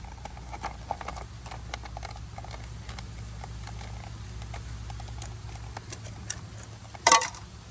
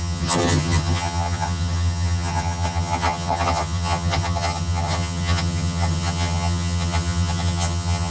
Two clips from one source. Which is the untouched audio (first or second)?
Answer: first